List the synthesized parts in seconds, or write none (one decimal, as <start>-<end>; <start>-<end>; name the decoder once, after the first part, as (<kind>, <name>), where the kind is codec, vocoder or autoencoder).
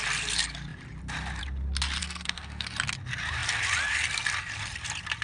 2.0-2.7 (codec, SNAC)